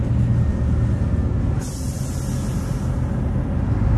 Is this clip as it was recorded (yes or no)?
yes